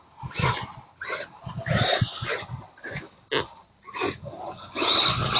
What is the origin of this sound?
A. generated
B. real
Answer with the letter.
B